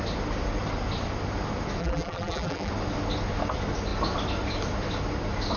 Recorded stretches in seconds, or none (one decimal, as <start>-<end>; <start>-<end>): 0.0-1.8; 2.7-5.6